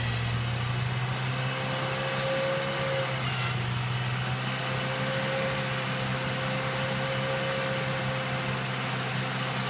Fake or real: real